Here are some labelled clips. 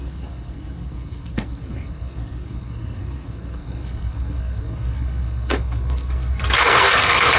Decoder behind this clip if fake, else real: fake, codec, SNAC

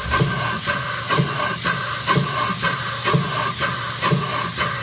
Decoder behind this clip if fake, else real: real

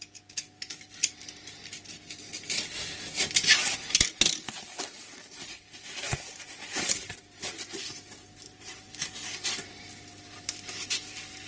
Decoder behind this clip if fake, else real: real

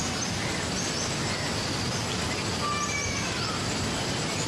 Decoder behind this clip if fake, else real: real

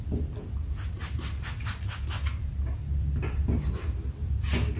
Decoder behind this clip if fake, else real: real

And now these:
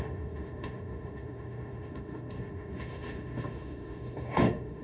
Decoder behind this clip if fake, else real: fake, autoencoder, DAC-VAE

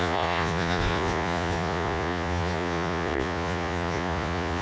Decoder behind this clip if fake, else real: fake, vocoder, Vocos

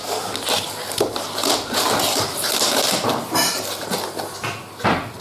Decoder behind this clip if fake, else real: real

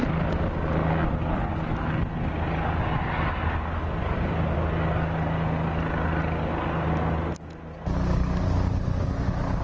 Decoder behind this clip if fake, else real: real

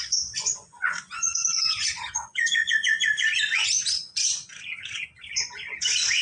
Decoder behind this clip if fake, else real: fake, vocoder, Vocos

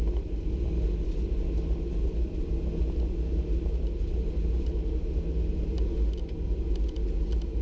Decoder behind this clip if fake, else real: real